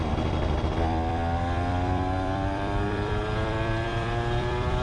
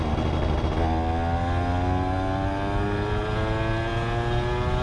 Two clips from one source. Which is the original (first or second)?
second